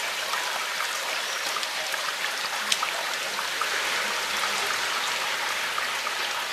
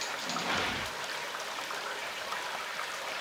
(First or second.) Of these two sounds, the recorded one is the first